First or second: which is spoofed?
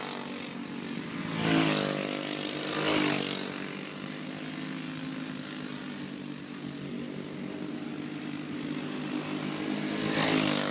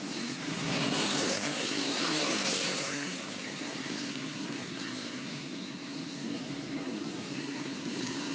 second